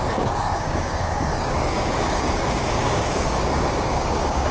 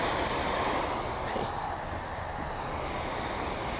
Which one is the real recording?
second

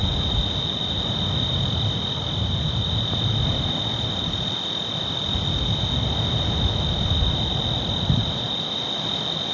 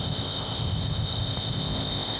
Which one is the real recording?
first